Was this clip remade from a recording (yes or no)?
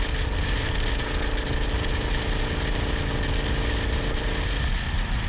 no